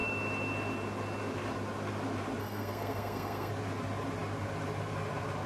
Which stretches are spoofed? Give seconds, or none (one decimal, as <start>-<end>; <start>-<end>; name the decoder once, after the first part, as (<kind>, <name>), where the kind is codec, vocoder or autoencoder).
2.4-3.5 (codec, SNAC)